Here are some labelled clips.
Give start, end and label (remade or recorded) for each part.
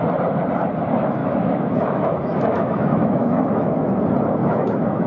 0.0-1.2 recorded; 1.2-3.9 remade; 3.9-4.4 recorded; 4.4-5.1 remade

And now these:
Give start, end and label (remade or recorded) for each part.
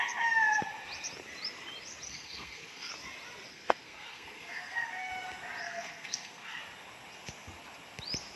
0.0-2.1 recorded; 2.1-2.9 remade; 2.9-3.5 recorded; 3.5-5.1 remade; 5.1-5.6 recorded; 5.6-6.6 remade; 6.6-8.4 recorded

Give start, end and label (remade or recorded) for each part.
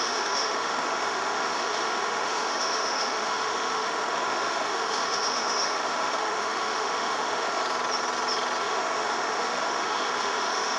0.0-7.6 remade; 7.6-8.6 recorded; 8.6-10.8 remade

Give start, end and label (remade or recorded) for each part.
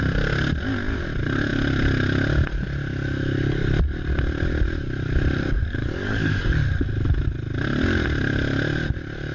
0.0-5.8 recorded; 5.8-6.4 remade; 6.4-9.3 recorded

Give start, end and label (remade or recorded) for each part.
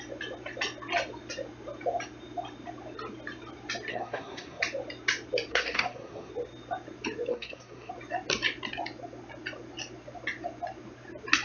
0.0-3.9 recorded; 3.9-4.6 remade; 4.6-5.5 recorded; 5.5-6.3 remade; 6.3-7.3 recorded; 7.3-7.9 remade; 7.9-11.4 recorded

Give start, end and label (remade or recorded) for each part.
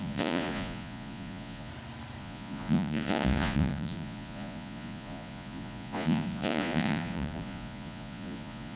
0.0-1.7 remade; 1.7-2.2 recorded; 2.2-8.8 remade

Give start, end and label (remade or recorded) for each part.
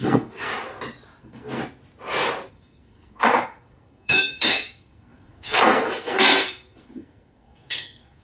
0.0-0.5 remade; 0.5-1.2 recorded; 1.2-1.6 remade; 1.6-2.5 recorded; 2.5-8.2 remade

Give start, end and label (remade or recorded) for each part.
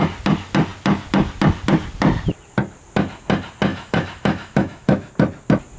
0.0-3.7 recorded; 3.7-5.1 remade; 5.1-5.8 recorded